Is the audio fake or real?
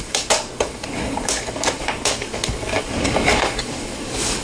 fake